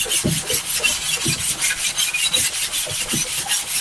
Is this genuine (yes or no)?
yes